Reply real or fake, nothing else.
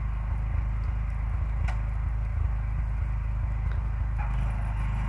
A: real